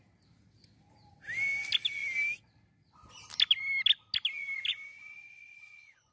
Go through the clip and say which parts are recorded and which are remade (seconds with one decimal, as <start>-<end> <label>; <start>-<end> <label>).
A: 0.0-4.7 recorded; 4.7-6.1 remade